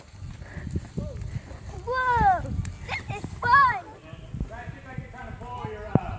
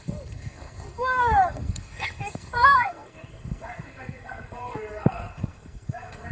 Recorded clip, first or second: first